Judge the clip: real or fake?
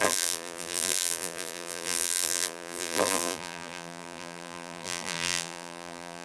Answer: fake